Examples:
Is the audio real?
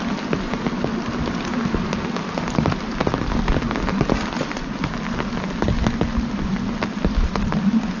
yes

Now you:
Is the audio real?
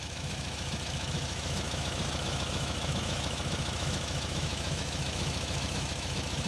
no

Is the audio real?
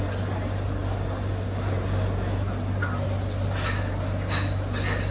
yes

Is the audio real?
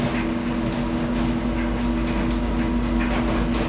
yes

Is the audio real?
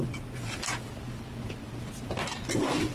yes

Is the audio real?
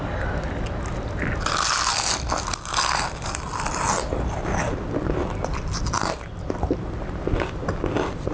yes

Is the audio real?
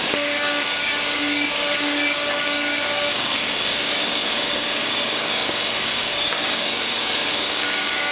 no